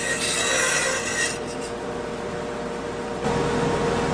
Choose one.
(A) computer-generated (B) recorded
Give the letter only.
B